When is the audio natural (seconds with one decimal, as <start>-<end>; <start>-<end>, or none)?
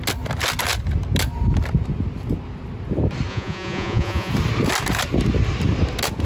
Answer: 0.0-3.3; 4.3-6.2